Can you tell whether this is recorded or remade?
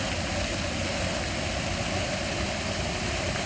recorded